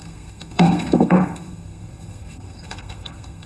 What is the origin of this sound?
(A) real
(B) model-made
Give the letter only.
B